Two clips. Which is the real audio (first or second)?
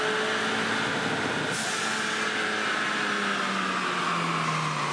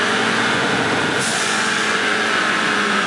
first